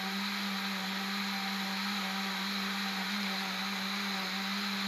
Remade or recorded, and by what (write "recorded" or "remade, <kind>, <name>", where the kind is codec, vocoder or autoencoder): recorded